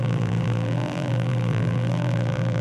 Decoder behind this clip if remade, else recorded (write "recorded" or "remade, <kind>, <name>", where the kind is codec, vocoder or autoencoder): remade, vocoder, BigVGAN v2